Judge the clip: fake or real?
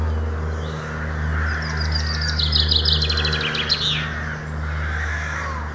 real